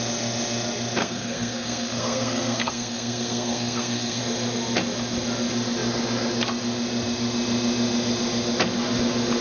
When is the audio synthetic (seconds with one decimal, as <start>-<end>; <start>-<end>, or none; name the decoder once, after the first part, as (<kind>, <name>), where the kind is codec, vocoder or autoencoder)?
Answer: 1.0-4.2 (codec, SNAC)